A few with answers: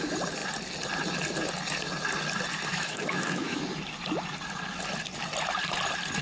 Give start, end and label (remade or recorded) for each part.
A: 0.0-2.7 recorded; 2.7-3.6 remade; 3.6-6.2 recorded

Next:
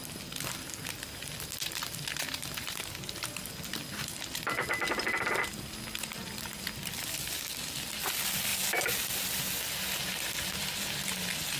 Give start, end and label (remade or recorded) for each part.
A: 0.0-11.6 recorded

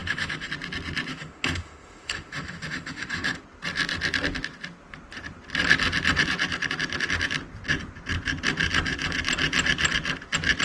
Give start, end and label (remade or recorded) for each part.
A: 0.0-0.5 remade; 0.5-1.1 recorded; 1.1-3.4 remade; 3.4-10.6 recorded

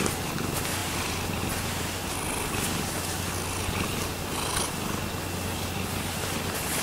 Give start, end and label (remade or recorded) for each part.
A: 0.0-6.8 recorded

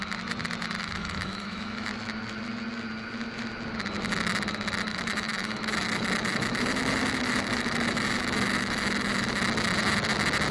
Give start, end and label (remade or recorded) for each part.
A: 0.0-0.8 recorded; 0.8-1.9 remade; 1.9-4.9 recorded; 4.9-9.4 remade; 9.4-10.5 recorded

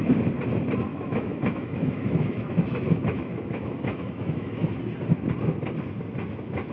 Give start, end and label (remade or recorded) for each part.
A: 0.0-0.9 recorded; 0.9-4.8 remade; 4.8-6.7 recorded